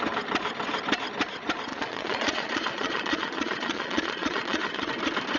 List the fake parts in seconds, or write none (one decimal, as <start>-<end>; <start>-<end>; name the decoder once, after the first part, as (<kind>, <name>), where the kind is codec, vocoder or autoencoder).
1.7-4.9 (vocoder, Vocos)